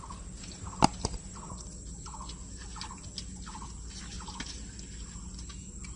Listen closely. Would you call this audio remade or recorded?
recorded